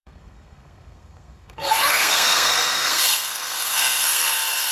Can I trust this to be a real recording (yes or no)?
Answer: no